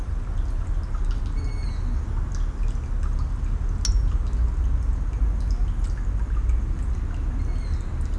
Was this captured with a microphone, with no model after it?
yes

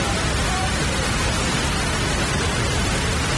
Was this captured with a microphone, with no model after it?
yes